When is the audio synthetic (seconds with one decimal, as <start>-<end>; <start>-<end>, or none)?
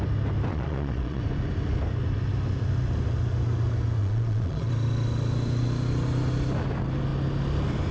0.5-1.2; 4.0-4.7